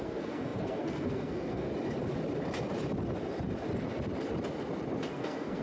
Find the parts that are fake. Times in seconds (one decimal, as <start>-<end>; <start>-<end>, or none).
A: 0.0-1.7; 5.1-5.6